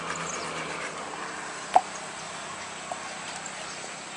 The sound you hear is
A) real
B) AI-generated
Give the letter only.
A